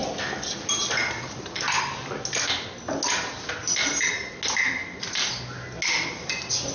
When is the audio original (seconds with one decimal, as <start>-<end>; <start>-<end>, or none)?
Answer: 0.0-6.7